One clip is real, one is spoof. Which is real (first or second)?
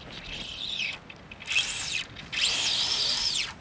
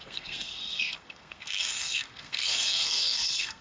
first